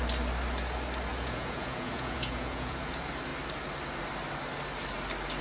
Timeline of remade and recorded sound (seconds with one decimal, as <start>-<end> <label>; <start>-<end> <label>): 0.0-1.1 recorded; 1.1-2.9 remade; 2.9-5.4 recorded